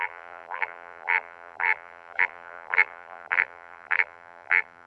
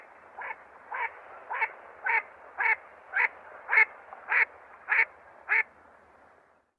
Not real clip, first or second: first